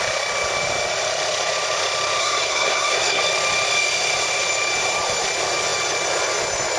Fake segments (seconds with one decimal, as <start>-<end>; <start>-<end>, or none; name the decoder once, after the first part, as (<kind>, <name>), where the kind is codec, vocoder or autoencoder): 2.2-3.2 (codec, SNAC)